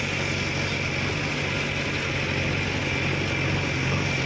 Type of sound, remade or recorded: recorded